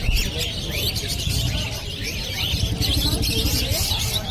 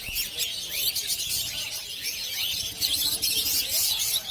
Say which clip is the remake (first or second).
second